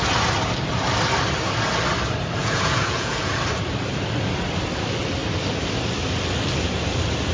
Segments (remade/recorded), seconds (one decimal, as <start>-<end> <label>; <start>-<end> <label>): 0.0-2.4 recorded; 2.4-3.3 remade; 3.3-7.3 recorded